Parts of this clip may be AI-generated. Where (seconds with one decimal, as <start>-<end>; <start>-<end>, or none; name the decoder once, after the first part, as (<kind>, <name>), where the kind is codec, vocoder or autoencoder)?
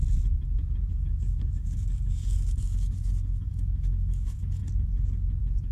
0.9-4.6 (codec, DAC)